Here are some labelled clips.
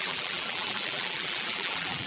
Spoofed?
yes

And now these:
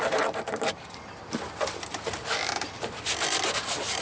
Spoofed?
yes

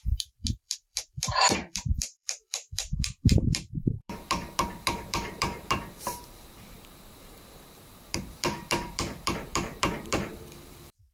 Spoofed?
yes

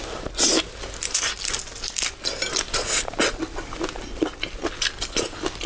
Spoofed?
no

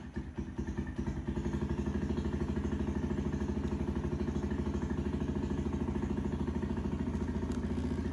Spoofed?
no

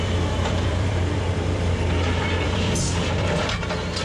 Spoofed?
yes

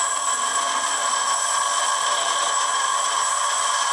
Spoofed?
no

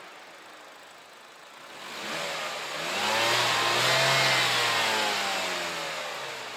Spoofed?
no